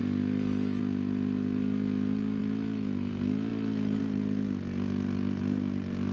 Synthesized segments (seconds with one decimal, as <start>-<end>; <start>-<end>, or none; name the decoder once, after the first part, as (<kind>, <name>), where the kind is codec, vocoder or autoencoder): none